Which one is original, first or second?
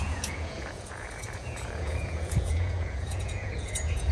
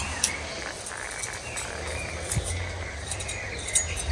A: second